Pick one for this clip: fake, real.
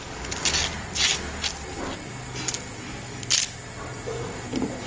real